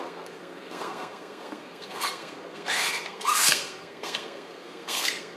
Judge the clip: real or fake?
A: fake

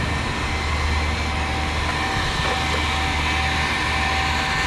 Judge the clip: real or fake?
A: real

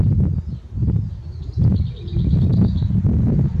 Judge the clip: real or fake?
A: real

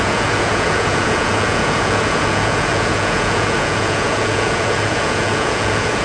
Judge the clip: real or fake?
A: fake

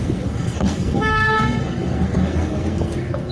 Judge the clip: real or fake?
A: fake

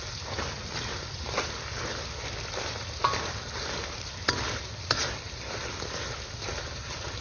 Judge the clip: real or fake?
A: real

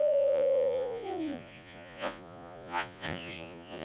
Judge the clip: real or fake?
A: fake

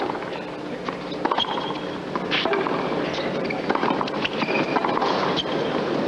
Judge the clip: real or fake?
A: real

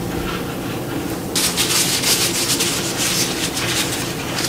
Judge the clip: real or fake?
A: real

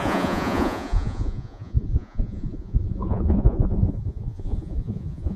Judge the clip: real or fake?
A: fake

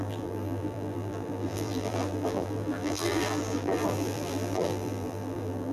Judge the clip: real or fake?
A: fake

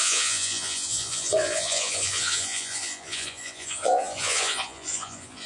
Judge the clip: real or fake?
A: fake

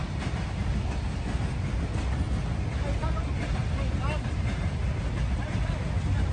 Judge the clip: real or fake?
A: real